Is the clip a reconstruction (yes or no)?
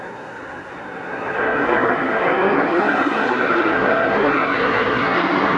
yes